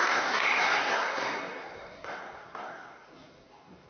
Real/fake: fake